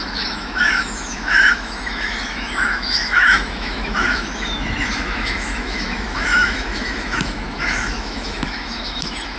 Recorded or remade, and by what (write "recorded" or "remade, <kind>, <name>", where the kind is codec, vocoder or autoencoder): remade, autoencoder, DAC-VAE